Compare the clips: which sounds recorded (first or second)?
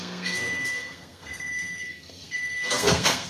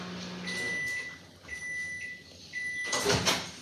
second